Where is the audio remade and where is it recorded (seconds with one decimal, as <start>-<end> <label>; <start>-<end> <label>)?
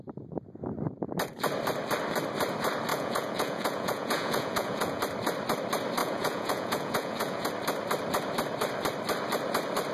0.0-2.9 recorded; 2.9-5.0 remade; 5.0-6.0 recorded; 6.0-7.5 remade; 7.5-9.9 recorded